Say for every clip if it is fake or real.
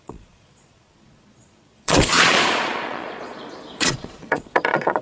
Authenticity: fake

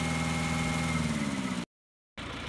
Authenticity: real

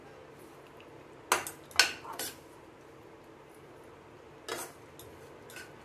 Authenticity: real